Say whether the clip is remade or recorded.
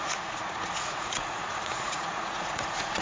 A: remade